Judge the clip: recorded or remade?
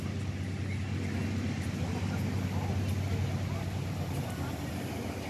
recorded